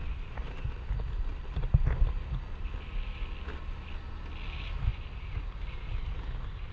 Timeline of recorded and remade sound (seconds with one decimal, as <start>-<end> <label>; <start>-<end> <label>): 0.0-6.7 recorded